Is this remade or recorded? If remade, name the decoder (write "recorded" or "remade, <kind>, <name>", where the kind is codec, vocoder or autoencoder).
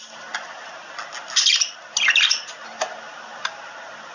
recorded